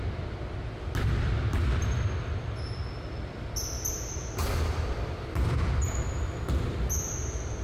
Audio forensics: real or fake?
real